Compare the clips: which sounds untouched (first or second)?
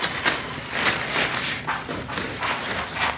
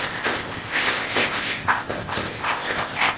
first